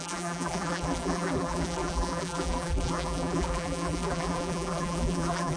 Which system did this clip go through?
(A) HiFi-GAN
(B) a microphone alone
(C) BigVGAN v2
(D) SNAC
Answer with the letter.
C